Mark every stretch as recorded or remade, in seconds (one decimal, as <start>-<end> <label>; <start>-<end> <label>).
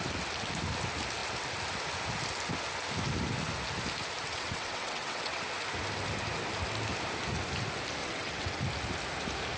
0.0-4.3 recorded; 4.3-5.4 remade; 5.4-8.0 recorded; 8.0-8.6 remade; 8.6-9.6 recorded